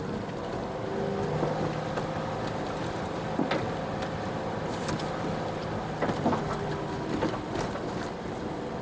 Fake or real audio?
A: real